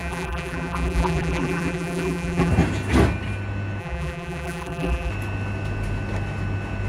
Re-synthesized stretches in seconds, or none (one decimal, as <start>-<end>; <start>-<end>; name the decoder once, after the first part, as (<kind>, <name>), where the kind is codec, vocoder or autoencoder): 0.0-2.5 (vocoder, BigVGAN v2); 3.8-5.1